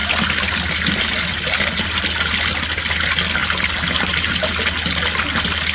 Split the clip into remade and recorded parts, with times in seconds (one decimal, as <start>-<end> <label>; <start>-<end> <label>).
0.0-5.7 recorded